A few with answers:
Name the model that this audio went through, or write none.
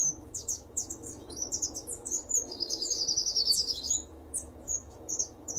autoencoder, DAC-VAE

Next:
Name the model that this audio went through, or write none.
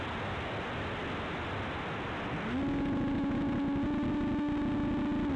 none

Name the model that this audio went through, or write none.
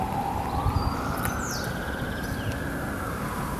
none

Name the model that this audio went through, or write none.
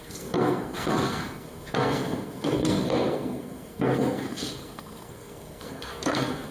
codec, SNAC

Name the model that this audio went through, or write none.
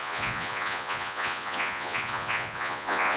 vocoder, Vocos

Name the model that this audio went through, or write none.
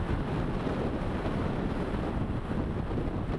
none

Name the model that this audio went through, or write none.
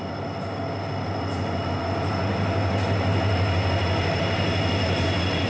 none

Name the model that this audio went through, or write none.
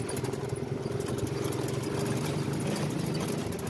none